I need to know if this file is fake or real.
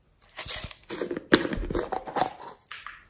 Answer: real